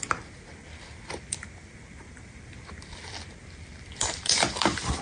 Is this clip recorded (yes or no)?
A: no